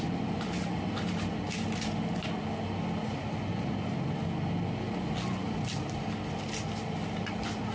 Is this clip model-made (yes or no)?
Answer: no